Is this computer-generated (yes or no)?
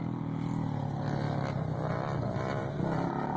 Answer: no